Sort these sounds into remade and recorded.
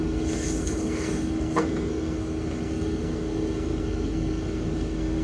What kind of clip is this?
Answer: remade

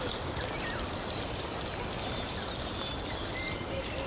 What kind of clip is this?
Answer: recorded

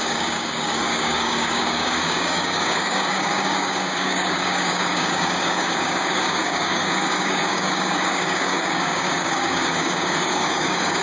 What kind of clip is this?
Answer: remade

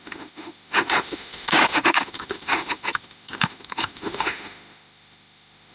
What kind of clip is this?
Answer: remade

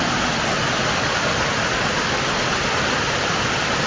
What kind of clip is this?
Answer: recorded